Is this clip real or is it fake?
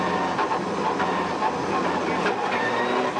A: real